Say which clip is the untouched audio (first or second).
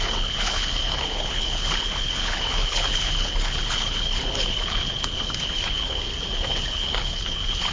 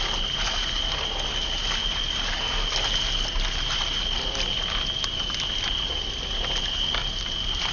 second